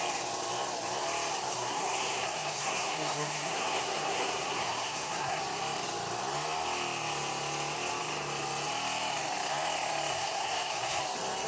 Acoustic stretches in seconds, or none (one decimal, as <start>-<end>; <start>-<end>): 0.0-1.5; 5.4-10.1; 11.0-11.5